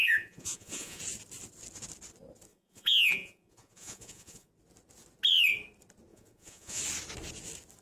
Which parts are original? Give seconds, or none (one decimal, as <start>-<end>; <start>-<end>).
1.0-2.5; 4.5-6.1; 6.8-7.8